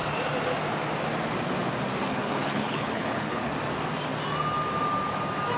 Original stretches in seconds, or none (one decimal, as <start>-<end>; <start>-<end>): 0.0-2.1; 3.5-5.6